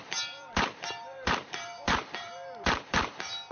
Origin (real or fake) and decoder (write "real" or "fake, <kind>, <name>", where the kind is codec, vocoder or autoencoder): fake, vocoder, BigVGAN v2